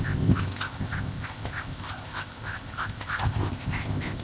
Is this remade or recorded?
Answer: remade